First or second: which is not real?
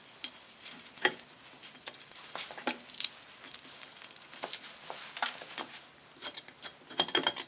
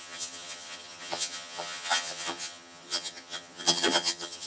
second